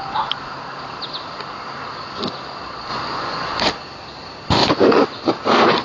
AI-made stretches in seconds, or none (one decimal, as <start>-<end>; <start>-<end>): 2.9-3.6; 4.6-5.3